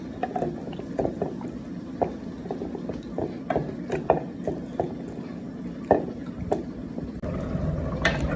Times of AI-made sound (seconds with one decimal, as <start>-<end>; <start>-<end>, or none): none